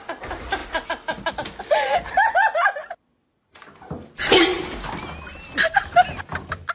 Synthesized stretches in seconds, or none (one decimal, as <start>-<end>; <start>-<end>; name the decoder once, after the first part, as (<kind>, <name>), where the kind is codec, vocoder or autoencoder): none